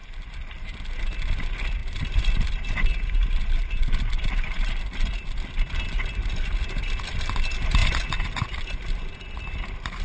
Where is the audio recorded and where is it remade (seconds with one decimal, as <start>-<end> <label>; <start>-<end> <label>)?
0.0-1.8 recorded; 1.8-6.6 remade; 6.6-10.0 recorded